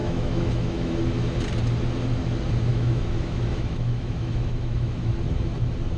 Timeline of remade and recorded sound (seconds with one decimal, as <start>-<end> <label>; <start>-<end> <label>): 0.0-1.0 remade; 1.0-2.7 recorded; 2.7-5.1 remade; 5.1-6.0 recorded